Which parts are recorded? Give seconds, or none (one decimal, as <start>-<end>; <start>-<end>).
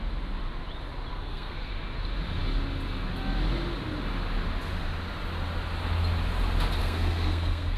0.0-1.1; 1.7-6.8